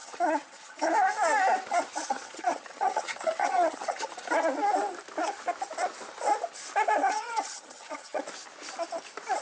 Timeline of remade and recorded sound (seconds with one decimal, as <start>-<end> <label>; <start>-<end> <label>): 0.0-0.9 remade; 0.9-1.7 recorded; 1.7-4.3 remade; 4.3-7.0 recorded; 7.0-8.2 remade; 8.2-9.4 recorded